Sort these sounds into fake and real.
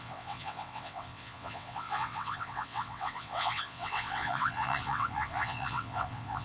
fake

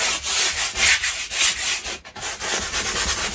real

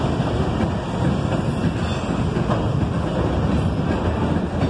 real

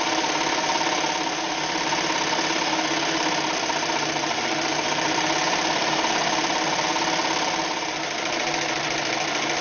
real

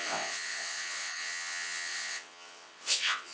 fake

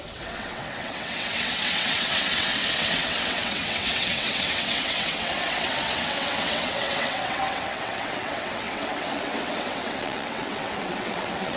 fake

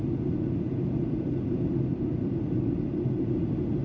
real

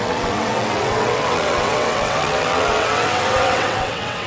fake